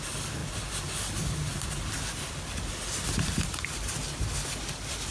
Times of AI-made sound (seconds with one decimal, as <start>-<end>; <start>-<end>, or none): none